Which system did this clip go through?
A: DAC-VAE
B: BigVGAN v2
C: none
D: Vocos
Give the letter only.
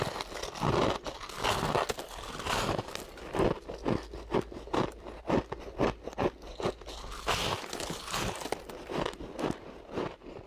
C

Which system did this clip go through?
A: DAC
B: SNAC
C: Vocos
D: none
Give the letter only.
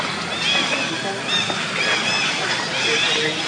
D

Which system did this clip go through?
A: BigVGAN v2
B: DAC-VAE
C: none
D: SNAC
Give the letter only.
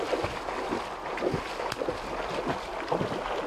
C